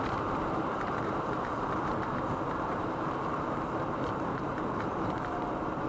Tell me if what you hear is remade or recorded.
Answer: remade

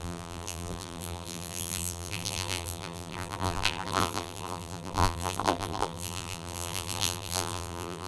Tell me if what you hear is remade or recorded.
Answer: remade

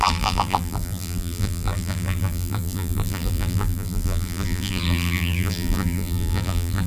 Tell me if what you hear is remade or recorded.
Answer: remade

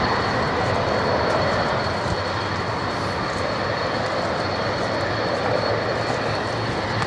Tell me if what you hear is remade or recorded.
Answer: recorded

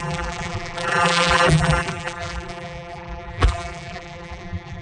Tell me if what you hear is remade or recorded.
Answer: remade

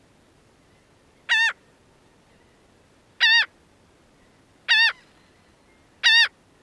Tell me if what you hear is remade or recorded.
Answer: recorded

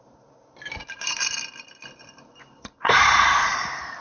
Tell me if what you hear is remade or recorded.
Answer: remade